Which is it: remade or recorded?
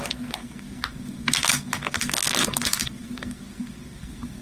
remade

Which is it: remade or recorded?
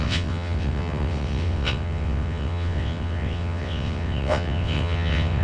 remade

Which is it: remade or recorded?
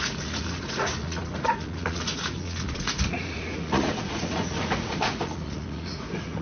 remade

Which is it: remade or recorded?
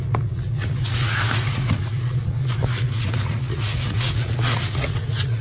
remade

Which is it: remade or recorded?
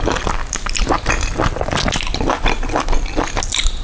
recorded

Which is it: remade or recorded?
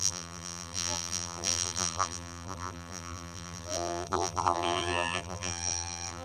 remade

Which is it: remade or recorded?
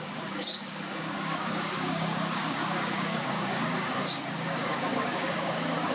remade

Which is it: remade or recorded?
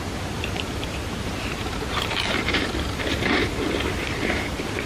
remade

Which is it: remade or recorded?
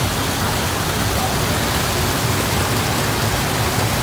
recorded